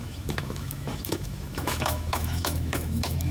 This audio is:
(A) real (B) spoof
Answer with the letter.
B